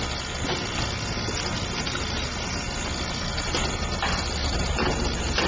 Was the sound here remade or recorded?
recorded